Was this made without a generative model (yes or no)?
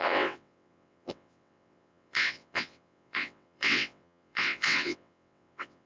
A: no